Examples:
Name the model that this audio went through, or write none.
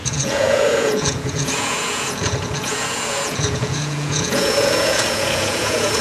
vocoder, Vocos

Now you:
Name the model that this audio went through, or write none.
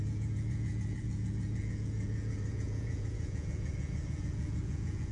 vocoder, Vocos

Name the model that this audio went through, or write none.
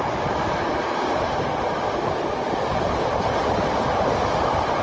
none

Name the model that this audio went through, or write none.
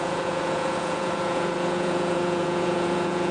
vocoder, Vocos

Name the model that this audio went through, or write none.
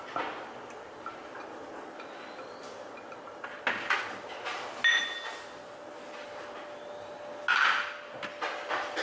none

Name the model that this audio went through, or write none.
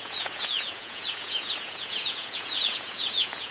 vocoder, Vocos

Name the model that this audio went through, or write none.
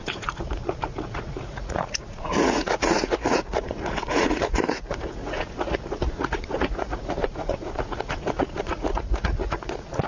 vocoder, Vocos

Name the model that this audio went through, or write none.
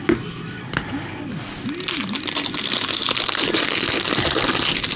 none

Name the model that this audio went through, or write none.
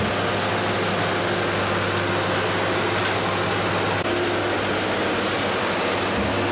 none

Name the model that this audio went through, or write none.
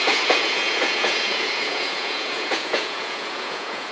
vocoder, Vocos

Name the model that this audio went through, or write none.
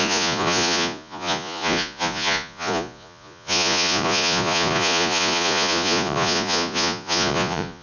vocoder, Vocos